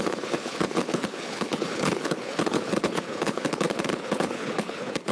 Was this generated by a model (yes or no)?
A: yes